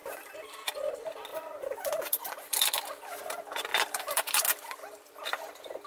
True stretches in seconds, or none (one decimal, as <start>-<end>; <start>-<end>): 0.9-1.3; 3.2-3.7; 5.5-5.9